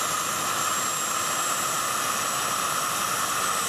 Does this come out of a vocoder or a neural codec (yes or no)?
no